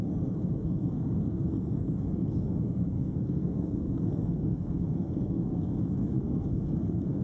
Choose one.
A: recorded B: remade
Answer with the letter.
B